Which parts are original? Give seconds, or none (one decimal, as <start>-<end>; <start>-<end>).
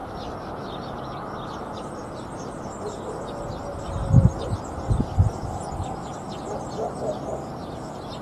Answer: 0.6-8.2